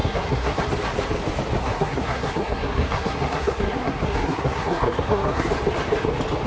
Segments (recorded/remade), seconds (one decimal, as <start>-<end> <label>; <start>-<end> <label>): 0.0-0.6 remade; 0.6-1.6 recorded; 1.6-5.5 remade; 5.5-6.5 recorded